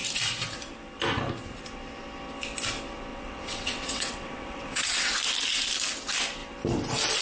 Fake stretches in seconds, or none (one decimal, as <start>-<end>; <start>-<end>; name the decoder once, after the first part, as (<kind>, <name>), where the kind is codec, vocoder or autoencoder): 3.1-5.1 (vocoder, WaveNeXt)

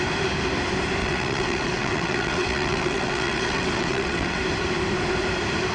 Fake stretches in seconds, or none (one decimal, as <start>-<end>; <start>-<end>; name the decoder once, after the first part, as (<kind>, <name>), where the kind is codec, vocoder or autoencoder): 1.0-4.4 (vocoder, WaveNeXt)

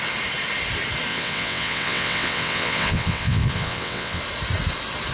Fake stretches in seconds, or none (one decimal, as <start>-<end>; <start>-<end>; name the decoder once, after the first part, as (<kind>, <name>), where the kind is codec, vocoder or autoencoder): 1.1-4.2 (vocoder, WaveNeXt)

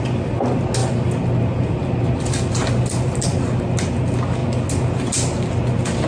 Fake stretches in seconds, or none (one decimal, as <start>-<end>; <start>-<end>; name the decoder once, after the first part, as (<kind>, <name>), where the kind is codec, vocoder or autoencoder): none

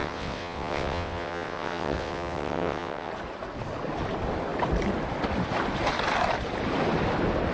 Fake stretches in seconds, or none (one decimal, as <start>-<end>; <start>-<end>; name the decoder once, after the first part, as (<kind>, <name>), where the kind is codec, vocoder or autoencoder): 0.0-3.1 (vocoder, WaveNeXt)

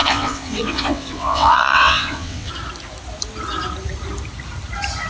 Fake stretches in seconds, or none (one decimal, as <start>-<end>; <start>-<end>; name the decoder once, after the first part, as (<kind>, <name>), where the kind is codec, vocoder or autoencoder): 0.0-2.5 (vocoder, WaveNeXt)

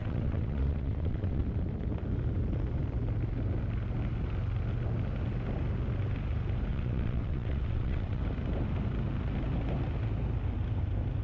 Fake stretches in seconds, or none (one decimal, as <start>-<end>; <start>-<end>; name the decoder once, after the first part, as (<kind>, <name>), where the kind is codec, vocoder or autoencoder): 0.0-1.4 (vocoder, WaveNeXt); 6.7-8.2

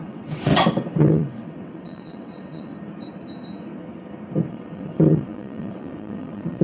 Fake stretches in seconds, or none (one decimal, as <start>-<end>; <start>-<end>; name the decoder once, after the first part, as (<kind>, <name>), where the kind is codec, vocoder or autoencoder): 0.0-0.5 (vocoder, WaveNeXt); 1.0-2.7; 4.5-6.6